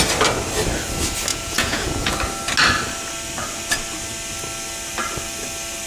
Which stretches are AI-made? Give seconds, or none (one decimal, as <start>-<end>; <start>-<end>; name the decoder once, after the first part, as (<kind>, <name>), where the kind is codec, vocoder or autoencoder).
1.3-2.1 (vocoder, Vocos)

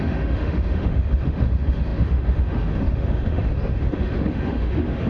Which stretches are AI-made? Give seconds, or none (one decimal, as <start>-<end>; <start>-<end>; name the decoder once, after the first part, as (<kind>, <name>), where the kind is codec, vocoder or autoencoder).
0.0-5.1 (autoencoder, DAC-VAE)

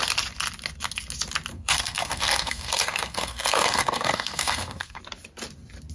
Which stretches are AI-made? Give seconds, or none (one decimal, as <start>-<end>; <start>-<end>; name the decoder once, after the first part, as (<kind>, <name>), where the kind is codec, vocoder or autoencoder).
1.5-5.0 (codec, SNAC)

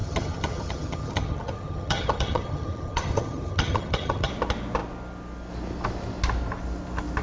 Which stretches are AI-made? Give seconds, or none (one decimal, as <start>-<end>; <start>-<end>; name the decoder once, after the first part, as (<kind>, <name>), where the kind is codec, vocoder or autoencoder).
0.0-4.3 (vocoder, HiFi-GAN)

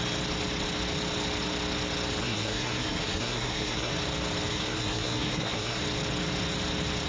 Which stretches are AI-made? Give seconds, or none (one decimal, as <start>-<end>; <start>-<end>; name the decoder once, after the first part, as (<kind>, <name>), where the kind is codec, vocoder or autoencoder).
2.2-3.9 (codec, SNAC); 4.5-5.8

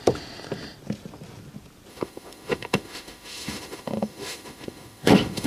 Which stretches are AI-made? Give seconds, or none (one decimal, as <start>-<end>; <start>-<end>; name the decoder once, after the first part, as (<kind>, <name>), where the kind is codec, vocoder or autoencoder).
1.9-5.5 (autoencoder, DAC-VAE)

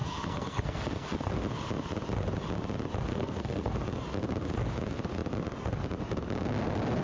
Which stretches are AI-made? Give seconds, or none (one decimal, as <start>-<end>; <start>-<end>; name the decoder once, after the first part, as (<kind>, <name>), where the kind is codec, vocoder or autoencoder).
0.0-1.3 (codec, SNAC); 3.1-3.7

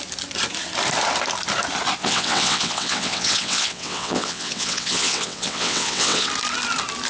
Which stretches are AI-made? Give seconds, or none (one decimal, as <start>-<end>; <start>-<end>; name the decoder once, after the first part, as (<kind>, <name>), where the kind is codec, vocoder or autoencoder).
2.0-6.3 (vocoder, WaveNeXt)